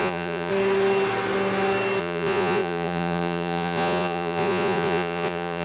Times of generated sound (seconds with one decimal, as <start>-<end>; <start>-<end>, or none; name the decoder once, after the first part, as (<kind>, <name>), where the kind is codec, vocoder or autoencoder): 0.0-0.5 (vocoder, Vocos); 2.0-5.6